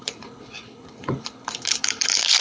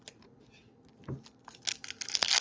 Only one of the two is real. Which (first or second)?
second